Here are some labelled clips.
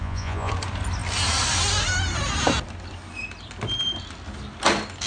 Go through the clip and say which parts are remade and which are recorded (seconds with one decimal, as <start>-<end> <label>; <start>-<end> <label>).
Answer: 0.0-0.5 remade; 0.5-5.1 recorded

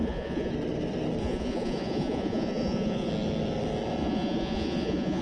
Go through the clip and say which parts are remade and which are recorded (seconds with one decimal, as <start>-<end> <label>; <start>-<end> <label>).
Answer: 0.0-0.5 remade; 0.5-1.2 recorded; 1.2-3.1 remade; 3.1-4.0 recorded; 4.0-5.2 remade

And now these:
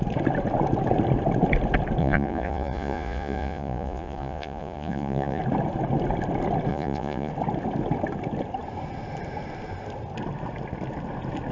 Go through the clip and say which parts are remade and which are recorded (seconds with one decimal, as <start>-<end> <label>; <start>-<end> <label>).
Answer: 0.0-2.0 recorded; 2.0-5.4 remade; 5.4-6.7 recorded; 6.7-7.3 remade; 7.3-11.5 recorded

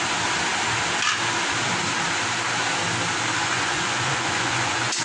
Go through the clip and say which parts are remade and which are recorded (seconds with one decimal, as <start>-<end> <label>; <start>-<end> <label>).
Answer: 0.0-3.4 recorded; 3.4-5.0 remade

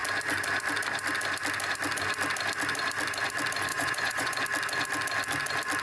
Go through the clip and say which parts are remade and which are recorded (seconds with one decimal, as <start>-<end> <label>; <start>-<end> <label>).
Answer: 0.0-3.7 recorded; 3.7-4.4 remade; 4.4-5.8 recorded

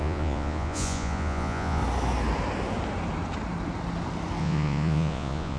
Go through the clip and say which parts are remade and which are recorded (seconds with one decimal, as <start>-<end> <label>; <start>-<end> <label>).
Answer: 0.0-1.8 remade; 1.8-4.4 recorded; 4.4-5.6 remade

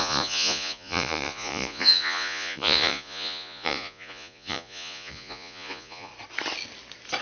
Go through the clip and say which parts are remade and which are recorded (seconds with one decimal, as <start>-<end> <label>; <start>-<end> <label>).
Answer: 0.0-6.1 remade; 6.1-7.2 recorded